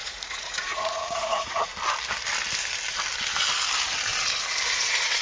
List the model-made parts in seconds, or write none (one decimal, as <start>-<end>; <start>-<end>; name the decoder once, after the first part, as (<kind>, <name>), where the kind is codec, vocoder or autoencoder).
0.0-1.7 (vocoder, Vocos); 4.8-5.2